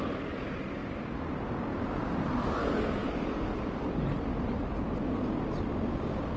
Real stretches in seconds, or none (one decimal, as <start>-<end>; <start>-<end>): 0.0-3.0; 3.8-6.4